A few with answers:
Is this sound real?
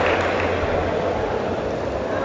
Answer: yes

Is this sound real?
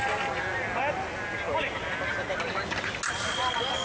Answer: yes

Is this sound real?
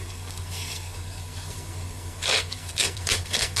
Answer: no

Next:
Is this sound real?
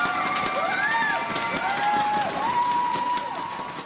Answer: yes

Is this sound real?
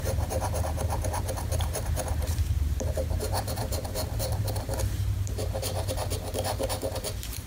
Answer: no